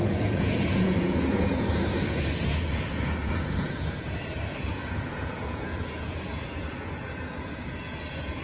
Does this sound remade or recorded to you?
remade